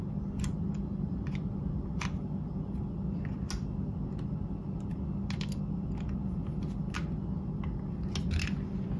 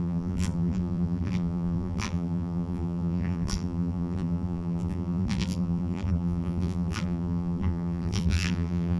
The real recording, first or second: first